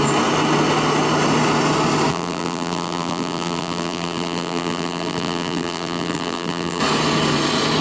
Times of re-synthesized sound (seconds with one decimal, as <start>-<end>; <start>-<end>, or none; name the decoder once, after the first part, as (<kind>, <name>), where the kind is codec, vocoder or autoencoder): 2.1-6.8 (vocoder, BigVGAN v2)